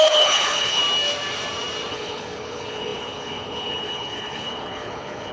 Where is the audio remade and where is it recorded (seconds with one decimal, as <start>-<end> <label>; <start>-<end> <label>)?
0.0-0.8 remade; 0.8-1.9 recorded; 1.9-5.3 remade

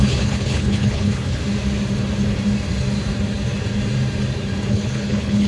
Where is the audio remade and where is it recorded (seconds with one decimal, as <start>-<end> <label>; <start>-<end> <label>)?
0.0-1.4 remade; 1.4-4.7 recorded; 4.7-5.5 remade

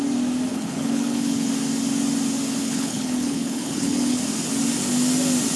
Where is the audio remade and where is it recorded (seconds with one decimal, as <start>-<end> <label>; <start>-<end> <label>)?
0.0-0.5 recorded; 0.5-1.5 remade; 1.5-2.6 recorded; 2.6-4.2 remade; 4.2-5.6 recorded

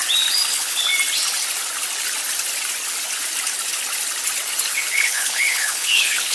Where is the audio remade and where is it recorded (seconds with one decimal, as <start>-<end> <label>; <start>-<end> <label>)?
0.0-0.5 recorded; 0.5-0.9 remade; 0.9-4.7 recorded; 4.7-6.3 remade

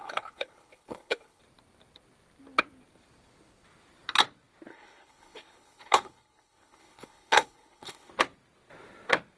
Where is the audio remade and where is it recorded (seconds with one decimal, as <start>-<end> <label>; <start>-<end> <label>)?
0.0-1.4 remade; 1.4-4.7 recorded; 4.7-8.1 remade; 8.1-9.4 recorded

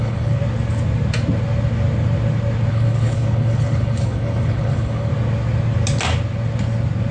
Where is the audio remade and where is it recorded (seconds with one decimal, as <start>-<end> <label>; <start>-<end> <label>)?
0.0-0.4 remade; 0.4-2.7 recorded; 2.7-5.1 remade; 5.1-7.1 recorded

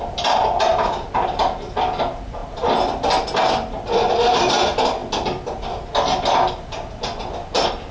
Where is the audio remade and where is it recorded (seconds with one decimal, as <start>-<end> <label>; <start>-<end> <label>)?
0.0-7.9 recorded